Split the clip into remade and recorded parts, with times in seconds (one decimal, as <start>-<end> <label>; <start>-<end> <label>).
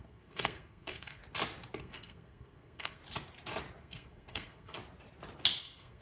0.0-1.2 remade; 1.2-1.8 recorded; 1.8-3.0 remade; 3.0-3.8 recorded; 3.8-4.8 remade; 4.8-5.6 recorded; 5.6-6.0 remade